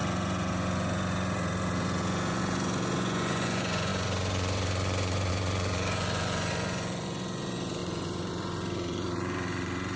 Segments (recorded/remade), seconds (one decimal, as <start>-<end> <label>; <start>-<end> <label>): 0.0-10.0 remade